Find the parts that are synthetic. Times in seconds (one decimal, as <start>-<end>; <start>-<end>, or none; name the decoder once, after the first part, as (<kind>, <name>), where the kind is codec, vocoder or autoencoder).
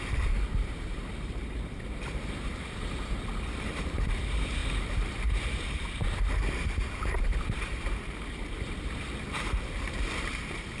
0.0-10.8 (vocoder, BigVGAN v2)